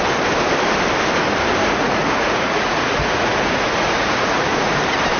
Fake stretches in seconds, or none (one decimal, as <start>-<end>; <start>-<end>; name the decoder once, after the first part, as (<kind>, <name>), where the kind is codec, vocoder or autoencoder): 1.6-4.7 (vocoder, Vocos)